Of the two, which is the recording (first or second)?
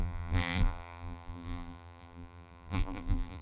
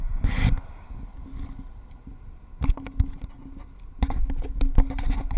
second